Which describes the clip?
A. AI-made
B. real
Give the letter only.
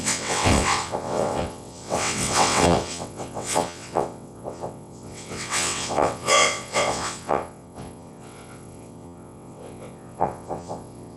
A